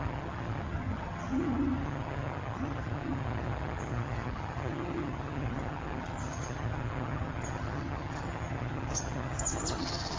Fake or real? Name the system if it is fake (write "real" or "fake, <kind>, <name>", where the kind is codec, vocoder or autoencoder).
fake, vocoder, HiFi-GAN